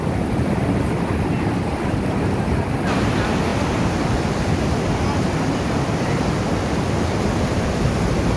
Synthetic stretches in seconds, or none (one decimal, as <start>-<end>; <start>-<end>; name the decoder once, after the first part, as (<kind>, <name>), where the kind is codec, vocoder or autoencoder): none